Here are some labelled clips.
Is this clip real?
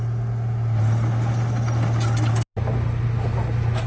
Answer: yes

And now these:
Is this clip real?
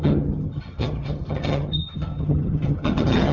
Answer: no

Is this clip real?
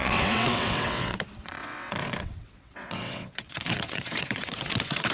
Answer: no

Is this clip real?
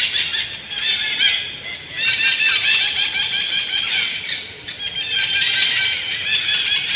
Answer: yes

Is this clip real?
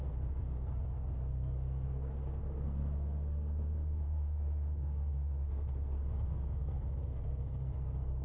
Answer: no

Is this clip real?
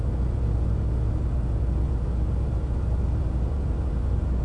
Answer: yes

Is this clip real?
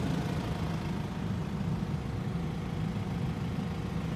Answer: yes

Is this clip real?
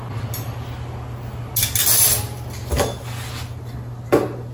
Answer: yes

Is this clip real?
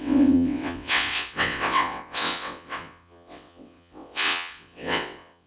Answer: no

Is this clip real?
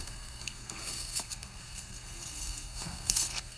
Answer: no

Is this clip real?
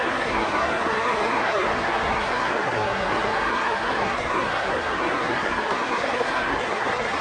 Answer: no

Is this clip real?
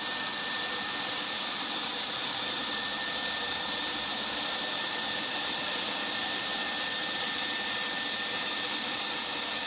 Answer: no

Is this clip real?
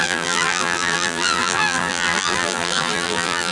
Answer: no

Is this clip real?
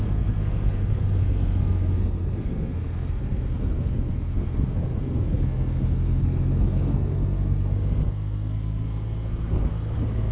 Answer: no